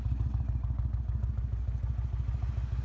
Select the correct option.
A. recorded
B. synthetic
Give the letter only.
A